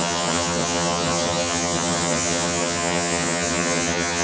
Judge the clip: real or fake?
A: fake